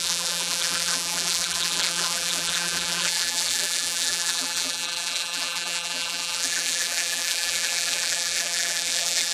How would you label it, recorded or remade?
remade